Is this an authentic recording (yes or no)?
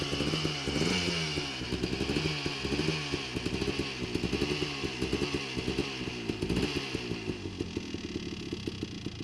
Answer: yes